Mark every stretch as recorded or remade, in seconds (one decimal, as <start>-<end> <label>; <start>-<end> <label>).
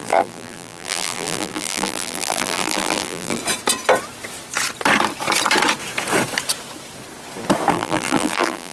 0.0-3.4 remade; 3.4-7.7 recorded; 7.7-8.7 remade